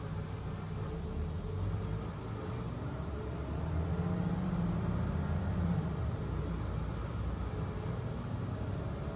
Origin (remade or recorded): recorded